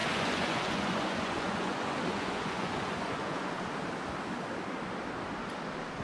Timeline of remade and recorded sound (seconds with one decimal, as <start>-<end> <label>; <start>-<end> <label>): 0.0-3.5 remade; 3.5-6.0 recorded